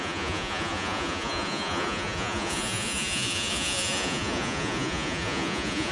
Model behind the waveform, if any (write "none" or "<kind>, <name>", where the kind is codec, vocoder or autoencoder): vocoder, Vocos